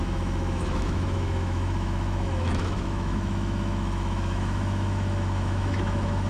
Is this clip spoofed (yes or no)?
yes